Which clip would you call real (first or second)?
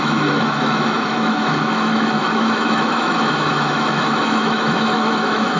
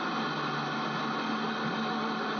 second